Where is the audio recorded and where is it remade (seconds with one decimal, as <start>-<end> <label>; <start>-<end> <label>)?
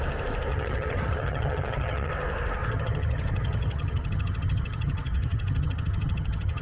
0.0-0.5 recorded; 0.5-2.1 remade; 2.1-2.6 recorded; 2.6-6.6 remade